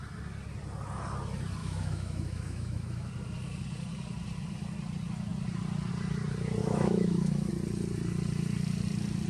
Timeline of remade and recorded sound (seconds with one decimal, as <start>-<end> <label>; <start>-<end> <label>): 0.0-1.6 recorded; 1.6-3.1 remade; 3.1-6.6 recorded; 6.6-7.5 remade; 7.5-9.3 recorded